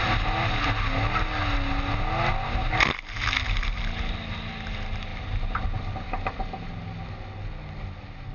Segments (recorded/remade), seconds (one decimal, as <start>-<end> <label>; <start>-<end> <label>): 0.0-8.3 recorded